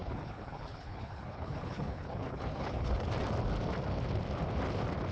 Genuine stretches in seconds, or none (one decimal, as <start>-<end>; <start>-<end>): 3.1-5.1